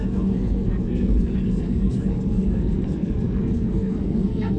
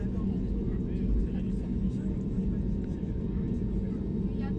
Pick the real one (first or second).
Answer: second